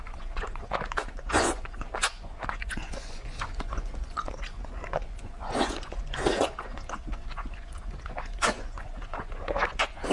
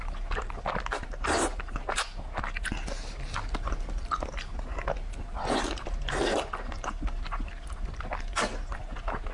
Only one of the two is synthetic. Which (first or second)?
first